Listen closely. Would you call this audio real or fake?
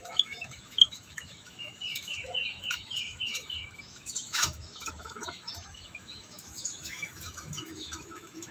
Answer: fake